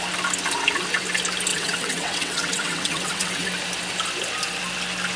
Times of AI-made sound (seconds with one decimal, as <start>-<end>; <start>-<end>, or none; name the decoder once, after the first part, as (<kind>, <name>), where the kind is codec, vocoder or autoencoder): 1.5-3.5 (vocoder, WaveNeXt)